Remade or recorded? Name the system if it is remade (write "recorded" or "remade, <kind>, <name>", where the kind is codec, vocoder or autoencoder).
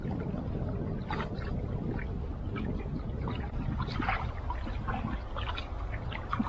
recorded